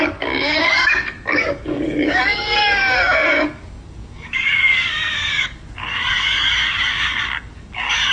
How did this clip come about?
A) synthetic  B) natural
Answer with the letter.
A